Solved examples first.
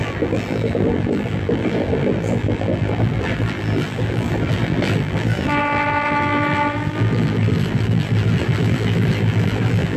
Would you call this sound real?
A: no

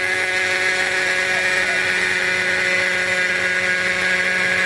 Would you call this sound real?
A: yes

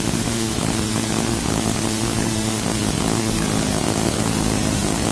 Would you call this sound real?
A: no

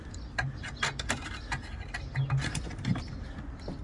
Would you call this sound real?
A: yes